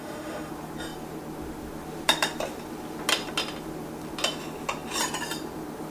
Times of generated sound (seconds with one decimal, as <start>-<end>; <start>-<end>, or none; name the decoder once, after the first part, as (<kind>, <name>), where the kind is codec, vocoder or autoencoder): 0.0-0.5 (autoencoder, DAC-VAE)